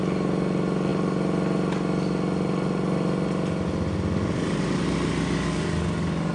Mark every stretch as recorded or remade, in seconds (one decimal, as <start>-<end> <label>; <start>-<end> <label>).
0.0-6.3 recorded